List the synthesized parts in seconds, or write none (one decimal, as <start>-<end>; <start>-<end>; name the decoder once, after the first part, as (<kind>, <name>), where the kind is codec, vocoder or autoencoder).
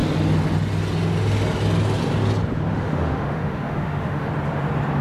2.7-4.3 (autoencoder, DAC-VAE)